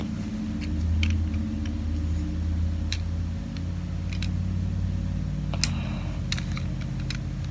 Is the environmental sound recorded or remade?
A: recorded